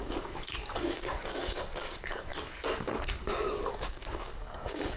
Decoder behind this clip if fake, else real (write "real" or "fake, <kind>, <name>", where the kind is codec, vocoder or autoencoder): fake, codec, DAC